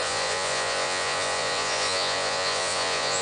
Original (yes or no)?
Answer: no